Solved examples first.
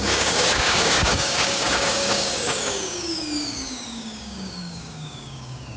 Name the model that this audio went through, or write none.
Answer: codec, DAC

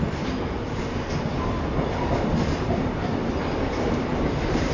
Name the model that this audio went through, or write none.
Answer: none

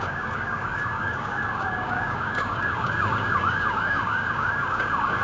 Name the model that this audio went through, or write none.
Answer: codec, DAC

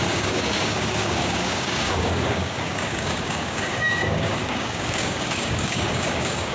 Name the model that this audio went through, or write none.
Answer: codec, DAC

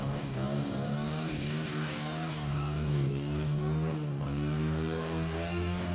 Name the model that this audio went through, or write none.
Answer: codec, DAC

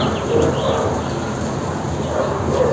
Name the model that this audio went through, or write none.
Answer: none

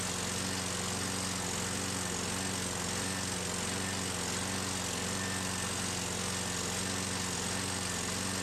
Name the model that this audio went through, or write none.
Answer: none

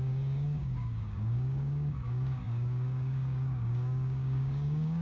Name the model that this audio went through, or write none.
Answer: codec, DAC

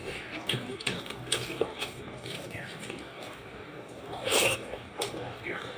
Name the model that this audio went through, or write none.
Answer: codec, DAC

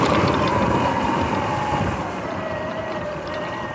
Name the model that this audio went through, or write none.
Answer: none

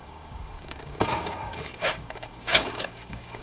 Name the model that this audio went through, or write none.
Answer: codec, DAC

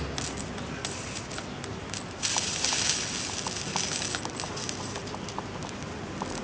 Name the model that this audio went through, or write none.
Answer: none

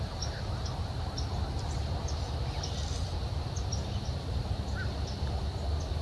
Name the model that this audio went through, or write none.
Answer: none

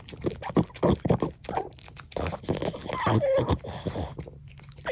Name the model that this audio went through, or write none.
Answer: none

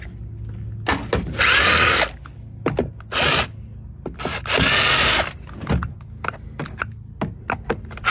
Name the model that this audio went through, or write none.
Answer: none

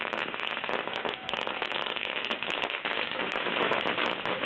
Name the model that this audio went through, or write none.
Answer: codec, DAC